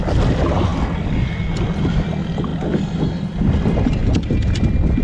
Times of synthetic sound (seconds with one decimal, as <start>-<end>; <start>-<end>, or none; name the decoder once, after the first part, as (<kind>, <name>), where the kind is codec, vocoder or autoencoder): none